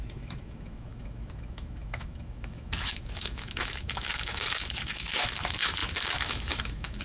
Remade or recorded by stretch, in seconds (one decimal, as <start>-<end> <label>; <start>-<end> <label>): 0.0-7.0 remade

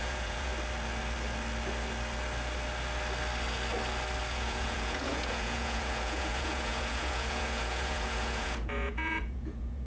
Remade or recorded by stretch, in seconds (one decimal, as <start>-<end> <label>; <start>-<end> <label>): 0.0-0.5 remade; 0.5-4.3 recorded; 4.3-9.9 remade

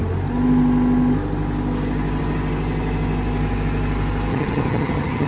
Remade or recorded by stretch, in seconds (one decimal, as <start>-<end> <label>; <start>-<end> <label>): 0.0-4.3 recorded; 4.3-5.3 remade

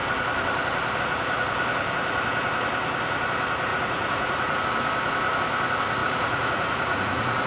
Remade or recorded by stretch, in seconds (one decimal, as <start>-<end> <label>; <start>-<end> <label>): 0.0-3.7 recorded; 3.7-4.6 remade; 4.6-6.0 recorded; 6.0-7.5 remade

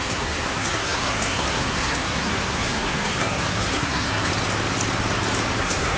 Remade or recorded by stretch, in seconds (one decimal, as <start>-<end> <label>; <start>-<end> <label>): 0.0-4.3 remade; 4.3-5.6 recorded; 5.6-6.0 remade

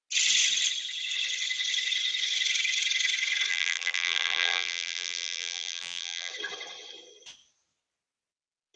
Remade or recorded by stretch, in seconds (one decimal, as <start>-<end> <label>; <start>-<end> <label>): 0.0-3.5 recorded; 3.5-6.3 remade; 6.3-8.8 recorded

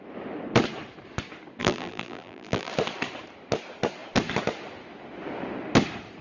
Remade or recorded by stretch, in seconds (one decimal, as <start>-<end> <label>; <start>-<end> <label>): 0.0-1.6 recorded; 1.6-2.7 remade; 2.7-6.2 recorded